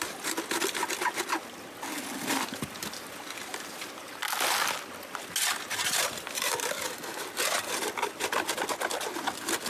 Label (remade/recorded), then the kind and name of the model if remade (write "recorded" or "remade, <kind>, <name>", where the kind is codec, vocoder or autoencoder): recorded